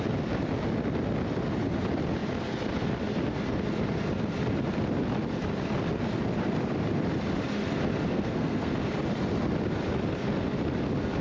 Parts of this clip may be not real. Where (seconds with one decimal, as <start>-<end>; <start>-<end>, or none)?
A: 8.1-8.7